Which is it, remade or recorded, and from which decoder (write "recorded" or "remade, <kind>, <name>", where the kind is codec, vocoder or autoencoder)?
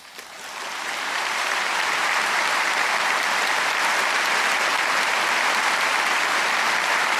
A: recorded